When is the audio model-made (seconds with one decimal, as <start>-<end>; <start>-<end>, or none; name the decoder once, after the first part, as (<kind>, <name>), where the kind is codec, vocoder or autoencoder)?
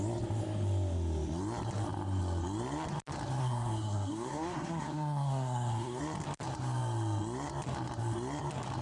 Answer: 3.4-6.0 (codec, SNAC)